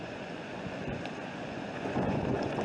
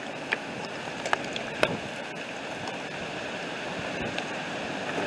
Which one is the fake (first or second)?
first